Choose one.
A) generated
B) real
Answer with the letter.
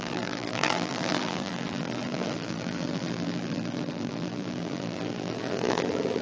A